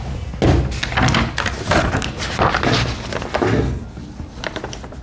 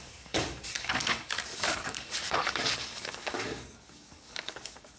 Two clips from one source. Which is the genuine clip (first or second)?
first